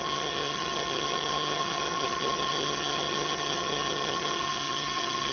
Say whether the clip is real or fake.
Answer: fake